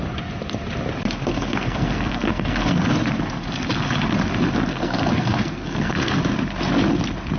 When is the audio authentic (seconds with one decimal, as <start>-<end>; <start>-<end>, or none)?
0.0-1.3; 2.9-4.7; 6.2-7.4